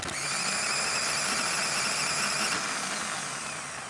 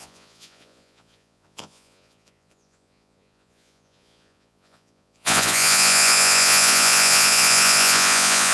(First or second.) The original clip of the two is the first